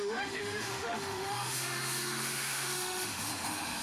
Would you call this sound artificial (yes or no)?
yes